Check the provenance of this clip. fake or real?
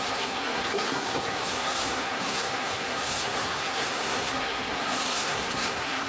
fake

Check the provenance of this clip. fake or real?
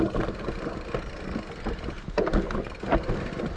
real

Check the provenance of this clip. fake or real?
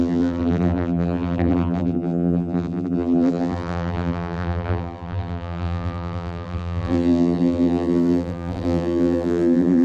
fake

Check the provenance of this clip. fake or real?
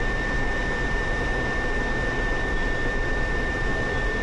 real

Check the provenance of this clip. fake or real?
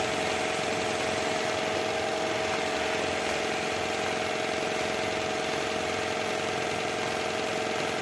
real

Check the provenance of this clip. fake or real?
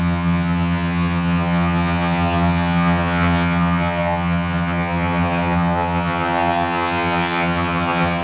fake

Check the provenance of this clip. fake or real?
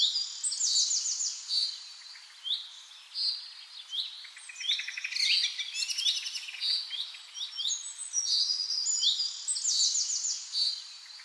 real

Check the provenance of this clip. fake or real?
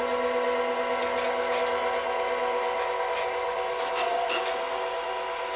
real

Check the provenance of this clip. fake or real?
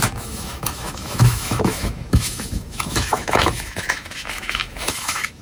fake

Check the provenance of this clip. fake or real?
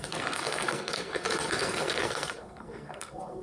fake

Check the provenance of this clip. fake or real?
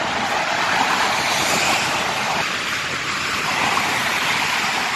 real